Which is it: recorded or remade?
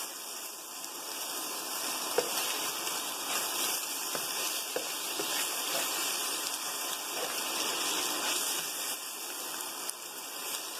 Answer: remade